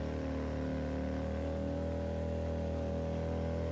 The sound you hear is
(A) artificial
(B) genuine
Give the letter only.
B